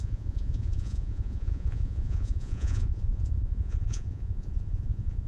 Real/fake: fake